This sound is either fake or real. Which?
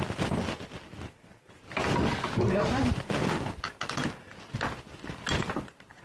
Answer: real